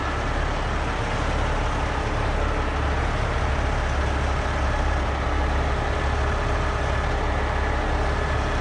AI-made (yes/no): no